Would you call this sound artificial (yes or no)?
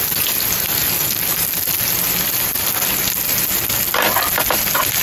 no